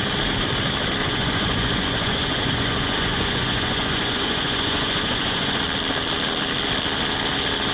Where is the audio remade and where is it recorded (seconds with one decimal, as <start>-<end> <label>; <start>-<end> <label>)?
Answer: 0.0-1.0 recorded; 1.0-5.6 remade; 5.6-7.7 recorded

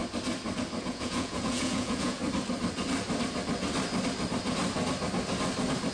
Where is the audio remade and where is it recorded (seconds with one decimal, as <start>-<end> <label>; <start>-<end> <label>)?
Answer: 0.0-0.8 recorded; 0.8-2.2 remade; 2.2-5.9 recorded

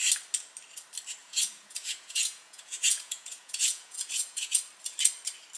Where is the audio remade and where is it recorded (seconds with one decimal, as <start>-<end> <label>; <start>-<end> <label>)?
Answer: 0.0-1.2 recorded; 1.2-4.6 remade; 4.6-5.6 recorded

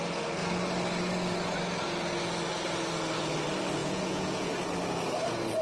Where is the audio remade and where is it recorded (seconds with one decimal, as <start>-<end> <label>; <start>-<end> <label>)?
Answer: 0.0-3.8 recorded; 3.8-4.5 remade; 4.5-5.6 recorded

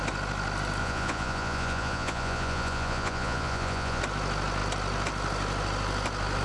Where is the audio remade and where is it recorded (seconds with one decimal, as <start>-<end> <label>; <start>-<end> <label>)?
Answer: 0.0-0.8 recorded; 0.8-4.0 remade; 4.0-6.4 recorded

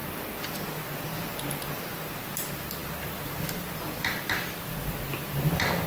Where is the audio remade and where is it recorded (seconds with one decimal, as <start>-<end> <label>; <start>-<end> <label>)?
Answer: 0.0-5.9 recorded

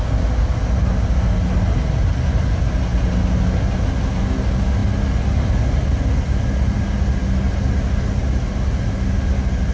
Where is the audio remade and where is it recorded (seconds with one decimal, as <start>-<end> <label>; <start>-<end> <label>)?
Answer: 0.0-9.7 recorded

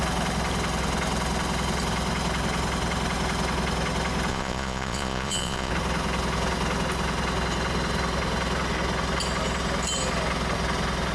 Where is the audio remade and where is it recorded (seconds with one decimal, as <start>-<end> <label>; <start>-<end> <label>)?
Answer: 0.0-4.3 recorded; 4.3-5.7 remade; 5.7-11.1 recorded